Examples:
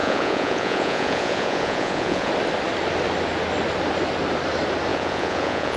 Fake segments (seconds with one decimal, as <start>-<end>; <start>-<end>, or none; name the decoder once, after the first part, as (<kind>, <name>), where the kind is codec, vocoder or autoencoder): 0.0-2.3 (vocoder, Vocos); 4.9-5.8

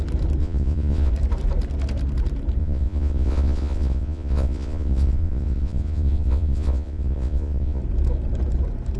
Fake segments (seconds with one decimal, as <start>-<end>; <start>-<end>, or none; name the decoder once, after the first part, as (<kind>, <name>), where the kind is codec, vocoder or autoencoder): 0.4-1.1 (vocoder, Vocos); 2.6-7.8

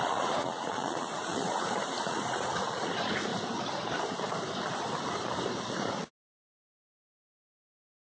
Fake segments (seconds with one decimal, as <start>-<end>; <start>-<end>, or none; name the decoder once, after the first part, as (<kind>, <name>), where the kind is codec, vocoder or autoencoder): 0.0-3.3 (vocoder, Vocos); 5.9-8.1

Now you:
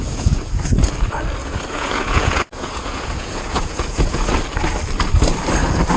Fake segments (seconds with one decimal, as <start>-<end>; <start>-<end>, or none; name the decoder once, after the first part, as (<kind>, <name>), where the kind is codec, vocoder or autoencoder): 0.0-0.9 (vocoder, Vocos); 1.4-4.3